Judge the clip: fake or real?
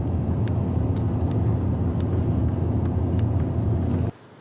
real